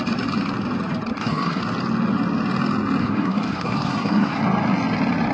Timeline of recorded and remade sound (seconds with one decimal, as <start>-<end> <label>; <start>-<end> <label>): 0.0-1.1 recorded; 1.1-1.6 remade; 1.6-3.0 recorded; 3.0-4.4 remade; 4.4-5.3 recorded